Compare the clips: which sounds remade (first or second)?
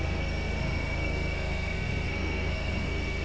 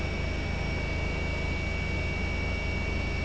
first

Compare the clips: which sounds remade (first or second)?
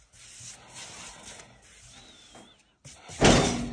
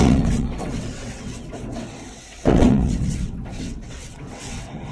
second